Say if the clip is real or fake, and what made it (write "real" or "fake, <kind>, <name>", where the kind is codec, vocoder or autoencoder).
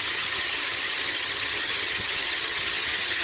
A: fake, vocoder, HiFi-GAN